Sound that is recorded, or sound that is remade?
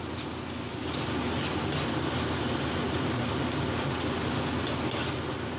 recorded